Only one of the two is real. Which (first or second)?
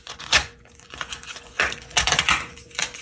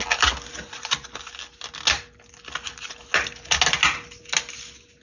second